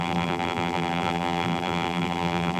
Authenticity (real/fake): fake